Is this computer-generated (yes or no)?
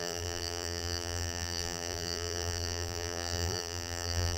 yes